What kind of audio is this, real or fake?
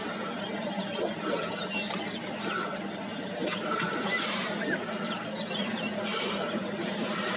real